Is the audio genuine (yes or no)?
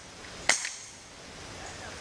yes